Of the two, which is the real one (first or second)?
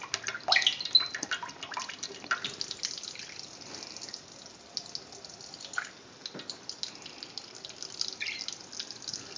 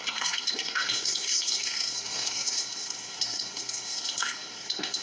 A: first